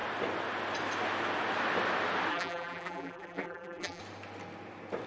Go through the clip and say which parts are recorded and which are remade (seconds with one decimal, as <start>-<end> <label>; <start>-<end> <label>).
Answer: 0.0-2.3 recorded; 2.3-4.0 remade; 4.0-5.1 recorded

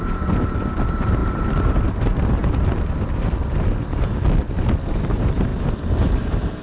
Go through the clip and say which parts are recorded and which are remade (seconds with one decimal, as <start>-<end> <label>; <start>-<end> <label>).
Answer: 0.0-2.4 remade; 2.4-4.9 recorded; 4.9-5.5 remade; 5.5-6.6 recorded

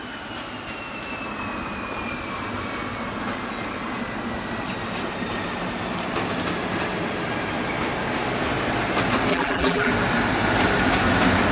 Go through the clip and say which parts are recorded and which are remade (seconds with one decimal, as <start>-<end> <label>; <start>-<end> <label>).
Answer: 0.0-9.3 recorded; 9.3-9.9 remade; 9.9-11.5 recorded

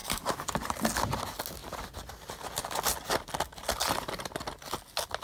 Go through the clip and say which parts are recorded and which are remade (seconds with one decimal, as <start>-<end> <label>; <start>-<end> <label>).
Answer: 0.0-0.9 remade; 0.9-5.2 recorded